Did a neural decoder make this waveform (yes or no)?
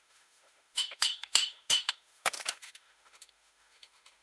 yes